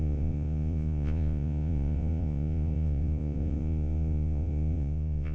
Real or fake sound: fake